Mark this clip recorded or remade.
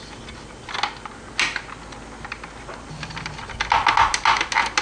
recorded